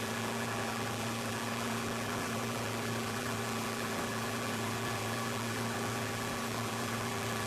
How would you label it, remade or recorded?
remade